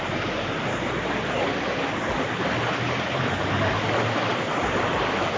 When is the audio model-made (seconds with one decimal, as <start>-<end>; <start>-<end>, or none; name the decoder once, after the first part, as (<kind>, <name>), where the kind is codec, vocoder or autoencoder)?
none